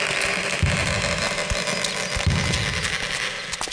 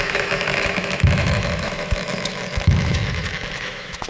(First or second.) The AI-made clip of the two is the second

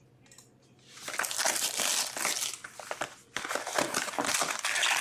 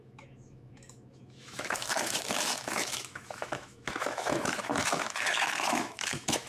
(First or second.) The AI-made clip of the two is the second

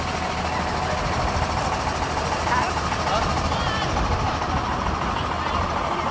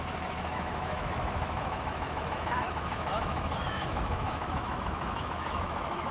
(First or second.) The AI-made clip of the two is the second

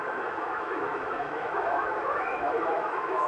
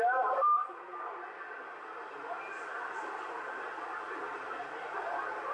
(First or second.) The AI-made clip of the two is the first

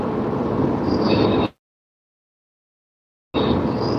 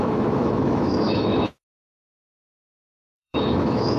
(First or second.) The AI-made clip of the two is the second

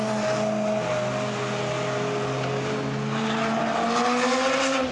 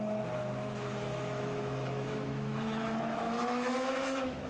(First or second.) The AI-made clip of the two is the second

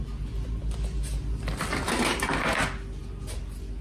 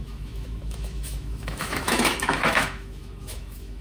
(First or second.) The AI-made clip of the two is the second